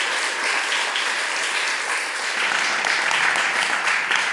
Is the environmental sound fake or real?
real